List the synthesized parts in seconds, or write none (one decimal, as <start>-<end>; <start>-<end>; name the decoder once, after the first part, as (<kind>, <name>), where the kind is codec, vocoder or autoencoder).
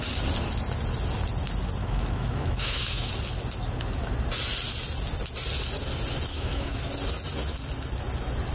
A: 1.8-3.1 (autoencoder, DAC-VAE); 6.3-6.9